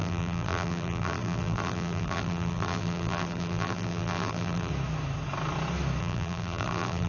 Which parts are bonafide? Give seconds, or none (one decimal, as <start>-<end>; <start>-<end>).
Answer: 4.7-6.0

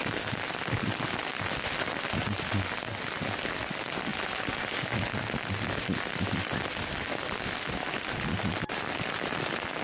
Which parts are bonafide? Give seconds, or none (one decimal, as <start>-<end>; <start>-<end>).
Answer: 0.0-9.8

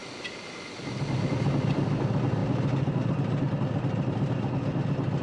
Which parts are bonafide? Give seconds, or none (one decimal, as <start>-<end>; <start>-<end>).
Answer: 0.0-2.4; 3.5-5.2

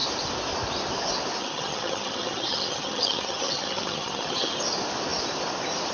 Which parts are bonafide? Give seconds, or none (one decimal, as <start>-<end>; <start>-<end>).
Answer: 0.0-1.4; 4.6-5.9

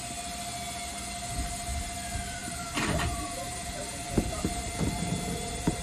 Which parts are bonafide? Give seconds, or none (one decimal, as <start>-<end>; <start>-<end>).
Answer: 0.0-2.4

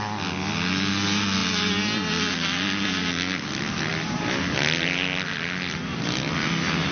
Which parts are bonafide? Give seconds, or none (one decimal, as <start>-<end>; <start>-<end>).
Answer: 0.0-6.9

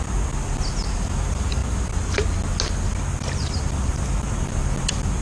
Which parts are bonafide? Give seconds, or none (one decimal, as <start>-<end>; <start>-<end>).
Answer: 0.0-5.2

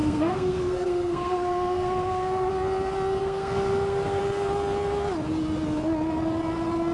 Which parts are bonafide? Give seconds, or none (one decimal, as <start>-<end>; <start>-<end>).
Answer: 2.5-3.2; 4.2-6.9